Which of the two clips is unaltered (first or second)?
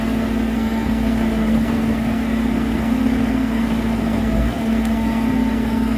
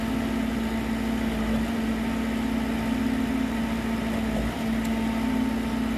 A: second